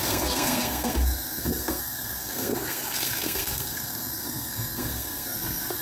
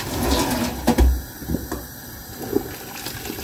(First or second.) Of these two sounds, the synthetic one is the first